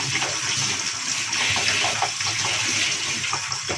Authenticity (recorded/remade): recorded